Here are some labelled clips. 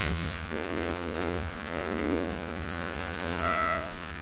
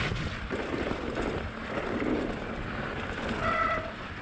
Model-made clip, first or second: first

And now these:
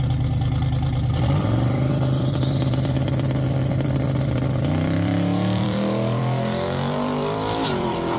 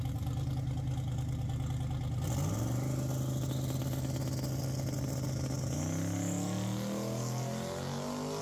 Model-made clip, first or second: first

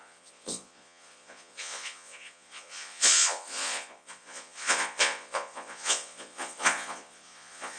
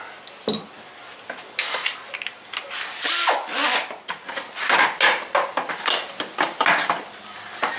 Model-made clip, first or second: first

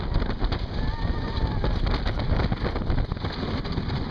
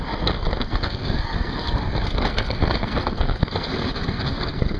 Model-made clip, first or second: second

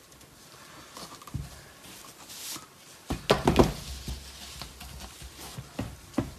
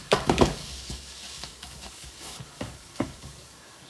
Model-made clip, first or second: second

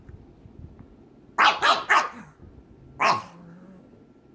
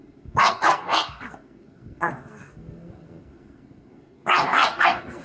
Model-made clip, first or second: second